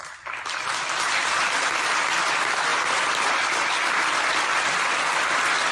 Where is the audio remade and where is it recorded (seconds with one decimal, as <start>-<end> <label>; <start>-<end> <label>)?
0.0-5.7 remade